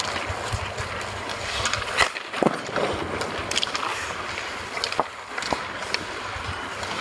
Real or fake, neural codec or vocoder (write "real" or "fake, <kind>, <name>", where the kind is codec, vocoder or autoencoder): real